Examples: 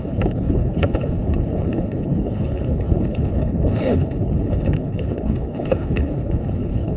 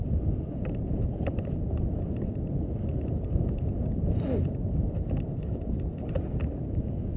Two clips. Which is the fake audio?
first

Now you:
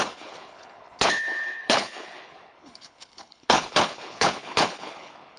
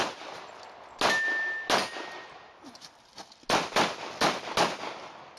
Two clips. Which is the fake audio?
first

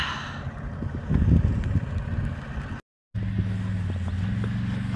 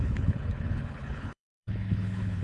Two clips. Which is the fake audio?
second